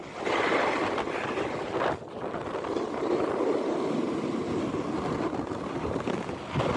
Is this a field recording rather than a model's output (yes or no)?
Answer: yes